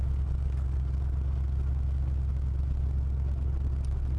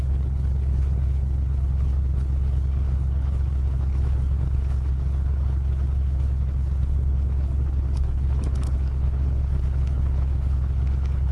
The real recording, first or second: first